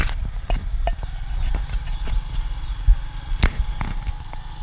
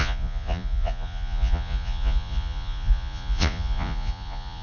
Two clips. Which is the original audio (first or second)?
first